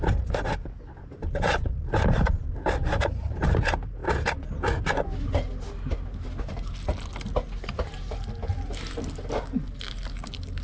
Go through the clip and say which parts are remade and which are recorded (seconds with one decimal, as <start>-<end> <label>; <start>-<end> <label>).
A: 0.0-10.6 recorded